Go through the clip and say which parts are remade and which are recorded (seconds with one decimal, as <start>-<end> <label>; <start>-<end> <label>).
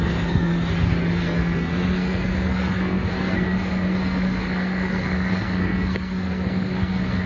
0.0-0.5 remade; 0.5-1.2 recorded; 1.2-7.3 remade